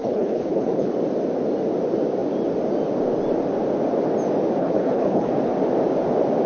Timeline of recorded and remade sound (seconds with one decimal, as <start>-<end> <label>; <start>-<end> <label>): 0.0-0.9 remade; 0.9-4.6 recorded; 4.6-5.3 remade; 5.3-6.5 recorded